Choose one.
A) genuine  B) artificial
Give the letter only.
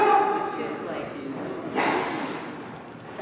A